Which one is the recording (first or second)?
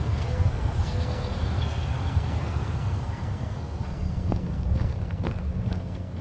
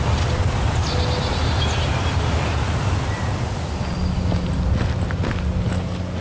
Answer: second